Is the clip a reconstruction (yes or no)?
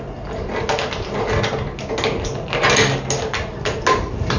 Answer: no